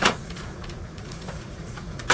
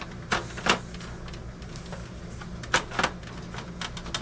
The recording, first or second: second